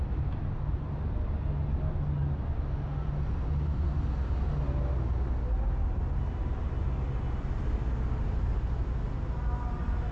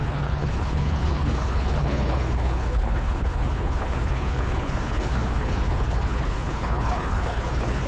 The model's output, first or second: second